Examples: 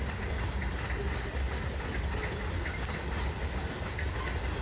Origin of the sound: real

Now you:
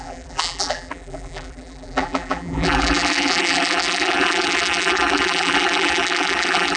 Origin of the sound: fake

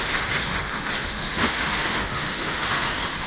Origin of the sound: fake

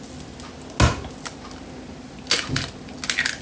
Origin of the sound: real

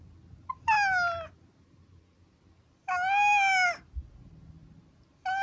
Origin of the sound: real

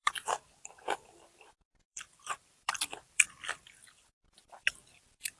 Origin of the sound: fake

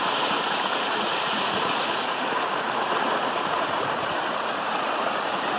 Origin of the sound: fake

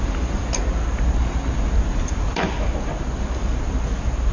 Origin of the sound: real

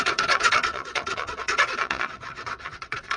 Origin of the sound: fake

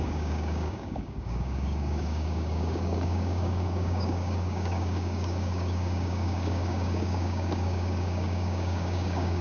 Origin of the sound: fake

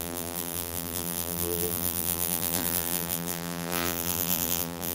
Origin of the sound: fake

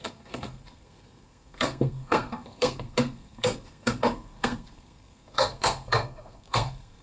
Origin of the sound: fake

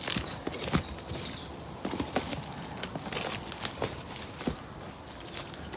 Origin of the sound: real